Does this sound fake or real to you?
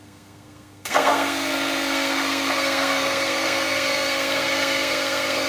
fake